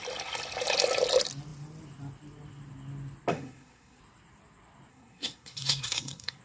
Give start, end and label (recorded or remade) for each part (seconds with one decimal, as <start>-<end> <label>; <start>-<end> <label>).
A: 0.0-3.3 recorded; 3.3-4.0 remade; 4.0-4.9 recorded; 4.9-6.4 remade